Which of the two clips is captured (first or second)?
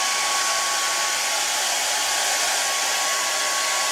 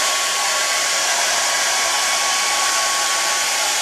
first